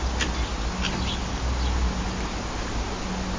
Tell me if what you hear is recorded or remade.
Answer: recorded